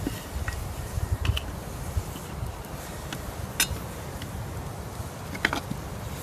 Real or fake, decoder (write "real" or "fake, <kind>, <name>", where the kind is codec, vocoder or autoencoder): real